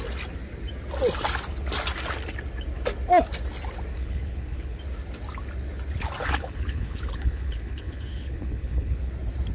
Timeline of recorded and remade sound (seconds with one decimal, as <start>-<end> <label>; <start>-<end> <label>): 0.0-3.9 recorded; 3.9-4.8 remade; 4.8-6.2 recorded; 6.2-9.1 remade; 9.1-9.5 recorded